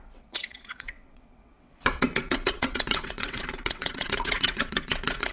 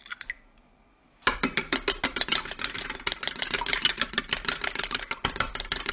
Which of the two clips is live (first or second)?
second